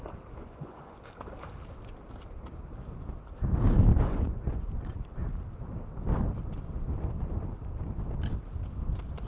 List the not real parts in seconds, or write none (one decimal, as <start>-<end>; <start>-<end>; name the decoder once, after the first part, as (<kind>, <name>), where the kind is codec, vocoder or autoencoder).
0.4-1.0 (vocoder, Vocos); 3.9-5.0